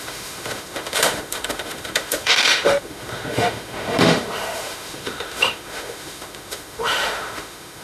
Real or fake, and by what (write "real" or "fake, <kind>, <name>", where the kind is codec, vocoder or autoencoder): fake, autoencoder, DAC-VAE